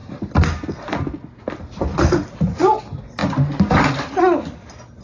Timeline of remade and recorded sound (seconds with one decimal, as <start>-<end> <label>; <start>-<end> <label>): 0.0-5.0 recorded

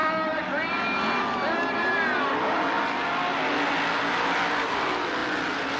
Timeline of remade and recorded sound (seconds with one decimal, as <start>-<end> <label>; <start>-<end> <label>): 0.0-5.8 recorded

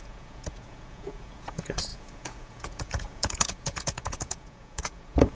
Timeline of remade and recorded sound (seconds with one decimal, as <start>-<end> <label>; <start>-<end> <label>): 0.0-5.3 remade

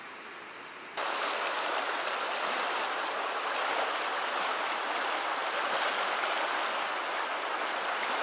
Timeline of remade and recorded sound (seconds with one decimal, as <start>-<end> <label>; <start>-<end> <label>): 0.0-8.2 recorded

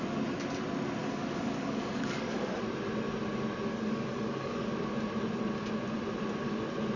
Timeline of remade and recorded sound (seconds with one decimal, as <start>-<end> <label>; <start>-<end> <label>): 0.0-1.0 recorded; 1.0-2.6 remade; 2.6-3.7 recorded; 3.7-4.7 remade; 4.7-7.0 recorded

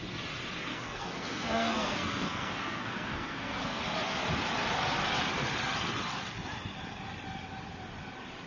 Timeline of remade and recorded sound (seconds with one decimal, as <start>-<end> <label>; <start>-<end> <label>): 0.0-0.7 recorded; 0.7-3.8 remade; 3.8-8.5 recorded